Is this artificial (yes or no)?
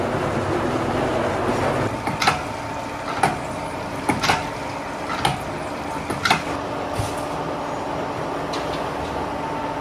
no